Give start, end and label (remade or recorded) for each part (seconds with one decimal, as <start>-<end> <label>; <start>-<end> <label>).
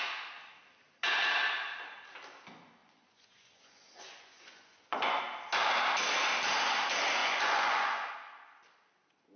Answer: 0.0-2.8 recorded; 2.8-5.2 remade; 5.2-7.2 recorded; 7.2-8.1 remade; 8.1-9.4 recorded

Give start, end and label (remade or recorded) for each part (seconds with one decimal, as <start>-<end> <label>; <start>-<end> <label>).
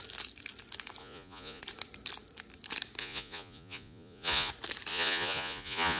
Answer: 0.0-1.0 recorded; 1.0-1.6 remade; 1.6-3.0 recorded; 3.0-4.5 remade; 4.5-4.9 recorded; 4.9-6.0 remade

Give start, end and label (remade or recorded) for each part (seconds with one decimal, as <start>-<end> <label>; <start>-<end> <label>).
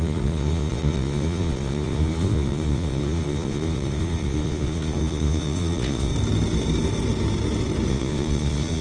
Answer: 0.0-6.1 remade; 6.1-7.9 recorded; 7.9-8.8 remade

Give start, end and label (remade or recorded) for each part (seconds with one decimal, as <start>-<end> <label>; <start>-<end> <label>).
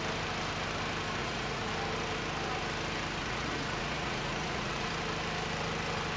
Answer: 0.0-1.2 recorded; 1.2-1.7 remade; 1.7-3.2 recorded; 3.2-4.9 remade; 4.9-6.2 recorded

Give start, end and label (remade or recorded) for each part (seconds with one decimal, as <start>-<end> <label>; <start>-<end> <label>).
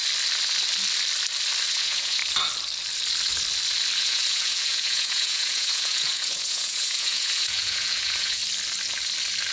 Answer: 0.0-1.7 recorded; 1.7-2.2 remade; 2.2-4.0 recorded; 4.0-8.4 remade; 8.4-9.5 recorded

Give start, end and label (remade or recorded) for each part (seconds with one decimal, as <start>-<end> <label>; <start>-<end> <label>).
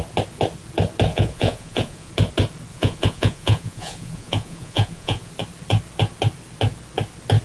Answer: 0.0-1.1 recorded; 1.1-2.1 remade; 2.1-2.7 recorded; 2.7-5.3 remade; 5.3-7.4 recorded